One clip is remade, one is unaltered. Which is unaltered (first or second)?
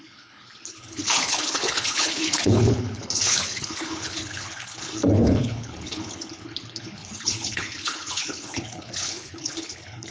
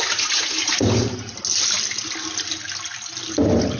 second